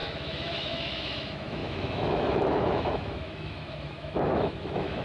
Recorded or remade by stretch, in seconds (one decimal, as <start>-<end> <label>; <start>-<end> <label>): 0.0-5.0 remade